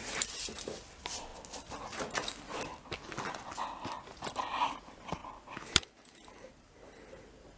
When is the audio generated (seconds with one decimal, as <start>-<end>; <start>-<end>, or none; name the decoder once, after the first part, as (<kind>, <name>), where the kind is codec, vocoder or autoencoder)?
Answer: 5.2-7.6 (vocoder, BigVGAN v2)